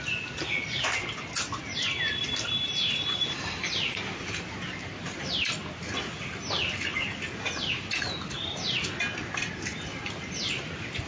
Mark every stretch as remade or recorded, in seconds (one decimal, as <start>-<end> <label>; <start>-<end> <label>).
0.0-11.1 recorded

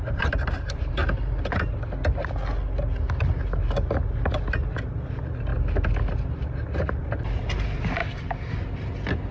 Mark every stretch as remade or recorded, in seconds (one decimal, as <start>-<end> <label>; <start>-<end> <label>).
0.0-1.0 remade; 1.0-4.8 recorded; 4.8-5.5 remade; 5.5-6.2 recorded; 6.2-8.0 remade; 8.0-8.5 recorded; 8.5-9.3 remade

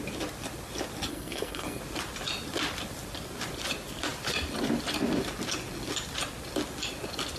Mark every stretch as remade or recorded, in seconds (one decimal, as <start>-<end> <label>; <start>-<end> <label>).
0.0-1.1 recorded; 1.1-1.8 remade; 1.8-7.4 recorded

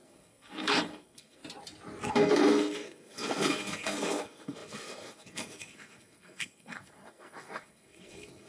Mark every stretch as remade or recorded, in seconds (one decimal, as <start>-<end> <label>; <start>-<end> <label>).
0.0-1.4 remade; 1.4-2.1 recorded; 2.1-8.5 remade

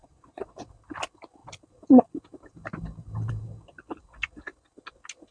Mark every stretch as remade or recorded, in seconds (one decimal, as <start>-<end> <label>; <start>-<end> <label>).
0.0-0.6 remade; 0.6-5.3 recorded

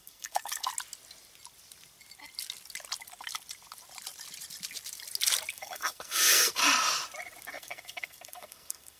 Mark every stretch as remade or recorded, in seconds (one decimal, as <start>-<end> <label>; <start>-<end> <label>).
0.0-0.7 remade; 0.7-5.5 recorded; 5.5-6.6 remade; 6.6-7.5 recorded; 7.5-9.0 remade